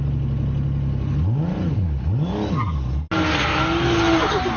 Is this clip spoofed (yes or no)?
no